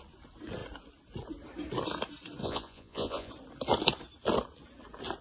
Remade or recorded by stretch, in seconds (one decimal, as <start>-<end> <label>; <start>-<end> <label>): 0.0-2.4 recorded; 2.4-3.3 remade; 3.3-5.2 recorded